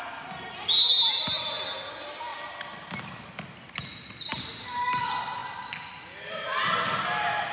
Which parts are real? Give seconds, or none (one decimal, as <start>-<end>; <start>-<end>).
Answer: 0.0-7.5